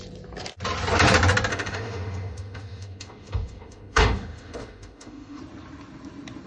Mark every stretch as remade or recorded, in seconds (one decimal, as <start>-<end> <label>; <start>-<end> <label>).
0.0-1.5 recorded; 1.5-5.4 remade; 5.4-6.5 recorded